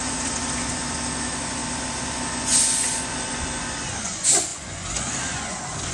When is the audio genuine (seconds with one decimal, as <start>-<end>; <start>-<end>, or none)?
none